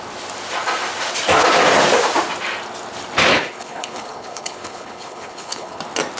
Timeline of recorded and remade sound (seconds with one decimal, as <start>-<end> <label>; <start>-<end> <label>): 0.0-3.3 recorded; 3.3-5.8 remade; 5.8-6.2 recorded